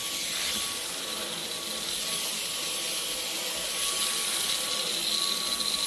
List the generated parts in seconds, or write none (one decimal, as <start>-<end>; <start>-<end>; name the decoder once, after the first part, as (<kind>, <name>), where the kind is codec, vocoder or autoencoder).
none